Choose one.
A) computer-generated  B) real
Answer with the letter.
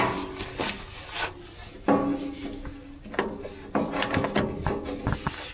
B